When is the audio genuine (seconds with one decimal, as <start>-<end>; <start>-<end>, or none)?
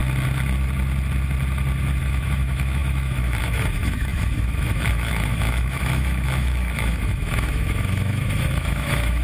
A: 0.0-2.0